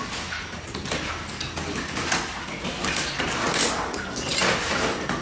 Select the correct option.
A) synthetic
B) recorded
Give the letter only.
B